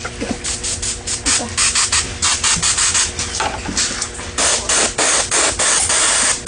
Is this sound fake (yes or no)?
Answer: no